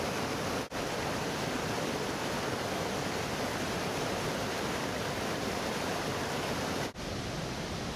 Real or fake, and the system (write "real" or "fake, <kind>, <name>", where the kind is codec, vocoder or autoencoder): real